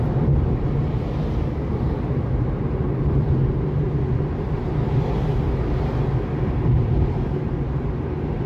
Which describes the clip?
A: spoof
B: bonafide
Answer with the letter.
B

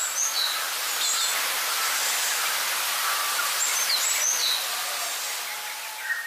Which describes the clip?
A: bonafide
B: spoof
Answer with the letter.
A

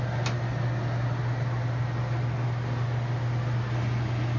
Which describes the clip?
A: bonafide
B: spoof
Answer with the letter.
A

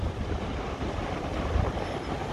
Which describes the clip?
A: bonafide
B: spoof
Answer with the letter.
A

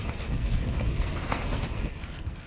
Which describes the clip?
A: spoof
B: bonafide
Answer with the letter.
A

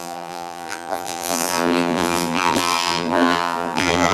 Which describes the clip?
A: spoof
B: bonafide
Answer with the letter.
A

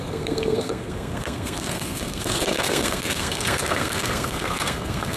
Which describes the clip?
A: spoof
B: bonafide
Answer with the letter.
A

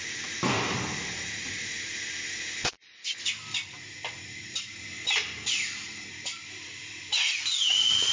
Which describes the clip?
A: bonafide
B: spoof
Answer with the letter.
A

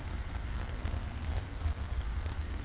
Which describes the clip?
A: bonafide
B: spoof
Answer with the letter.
B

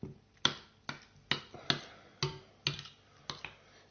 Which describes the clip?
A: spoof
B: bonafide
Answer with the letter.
B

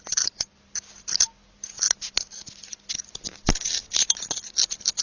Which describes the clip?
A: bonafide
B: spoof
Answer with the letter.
A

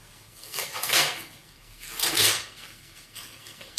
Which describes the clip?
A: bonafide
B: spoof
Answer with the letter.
B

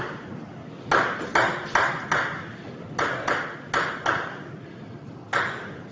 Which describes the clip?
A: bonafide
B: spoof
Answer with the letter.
A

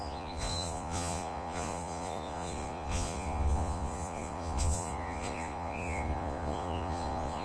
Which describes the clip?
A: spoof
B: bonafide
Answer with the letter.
A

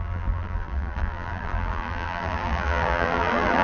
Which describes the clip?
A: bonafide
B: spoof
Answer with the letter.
B